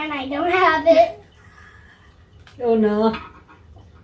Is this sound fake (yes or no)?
no